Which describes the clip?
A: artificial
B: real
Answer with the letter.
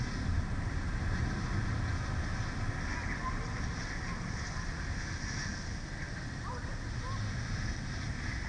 B